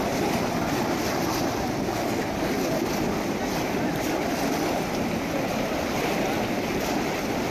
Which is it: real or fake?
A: real